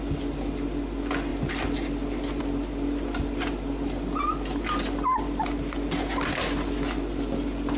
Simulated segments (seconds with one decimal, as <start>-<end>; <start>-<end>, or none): none